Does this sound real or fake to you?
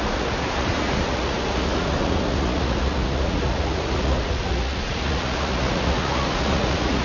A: fake